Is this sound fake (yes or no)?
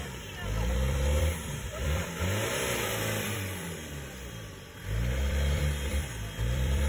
yes